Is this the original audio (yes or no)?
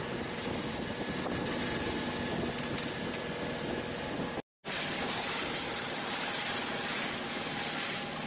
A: yes